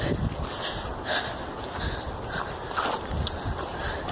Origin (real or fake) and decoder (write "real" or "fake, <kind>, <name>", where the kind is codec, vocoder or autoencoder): real